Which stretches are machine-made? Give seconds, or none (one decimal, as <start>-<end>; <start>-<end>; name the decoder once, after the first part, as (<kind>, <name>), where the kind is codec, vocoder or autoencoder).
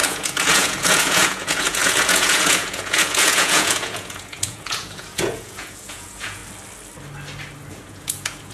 0.0-6.4 (vocoder, Vocos); 7.7-8.5